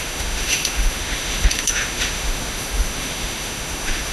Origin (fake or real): fake